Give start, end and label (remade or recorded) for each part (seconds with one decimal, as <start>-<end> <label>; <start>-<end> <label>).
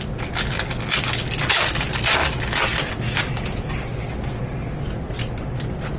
0.0-6.0 recorded